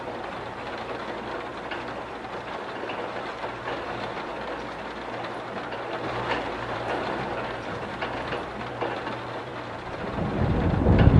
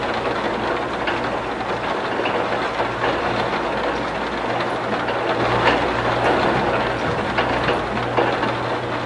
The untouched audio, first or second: second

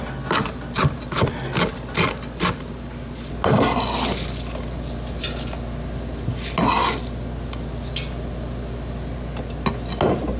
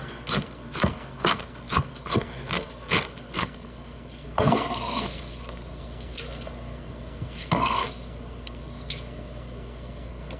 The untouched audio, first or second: first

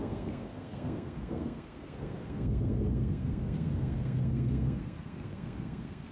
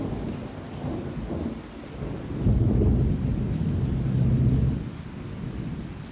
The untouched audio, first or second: second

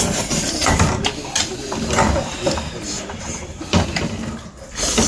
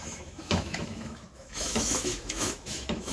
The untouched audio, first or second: first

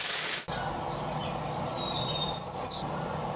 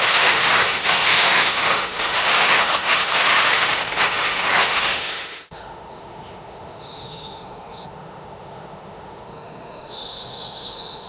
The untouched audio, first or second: first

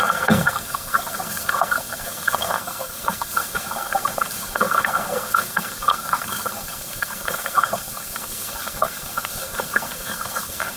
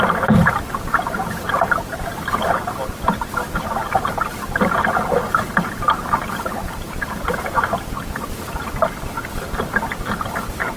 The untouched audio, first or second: second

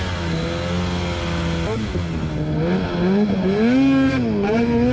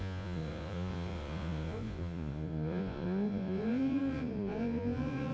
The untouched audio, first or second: first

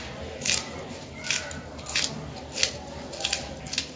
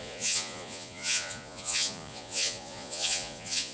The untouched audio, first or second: first